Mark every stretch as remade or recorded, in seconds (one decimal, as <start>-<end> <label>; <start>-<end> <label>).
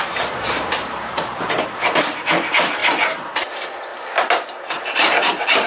0.0-3.9 remade; 3.9-4.8 recorded; 4.8-5.7 remade